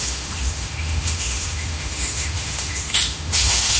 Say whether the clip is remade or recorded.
remade